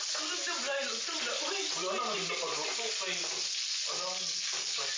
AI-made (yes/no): no